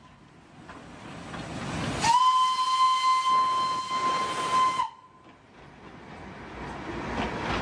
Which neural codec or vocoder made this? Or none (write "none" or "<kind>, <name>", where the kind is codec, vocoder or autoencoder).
none